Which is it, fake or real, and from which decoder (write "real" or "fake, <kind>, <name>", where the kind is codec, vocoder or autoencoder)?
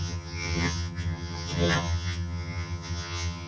fake, vocoder, HiFi-GAN